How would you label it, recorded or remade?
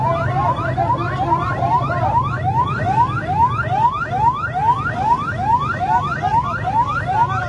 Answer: recorded